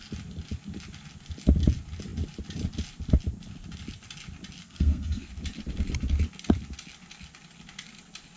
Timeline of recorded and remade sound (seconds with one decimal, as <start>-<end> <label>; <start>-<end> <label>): 0.0-4.6 recorded; 4.6-5.3 remade; 5.3-8.4 recorded